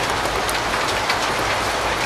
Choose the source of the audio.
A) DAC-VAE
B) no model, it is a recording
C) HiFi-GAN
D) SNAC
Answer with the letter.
B